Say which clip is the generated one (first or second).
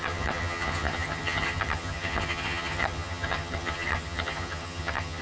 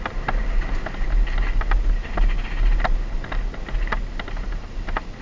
first